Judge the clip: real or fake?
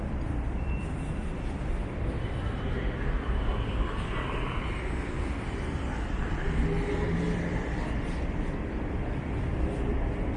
real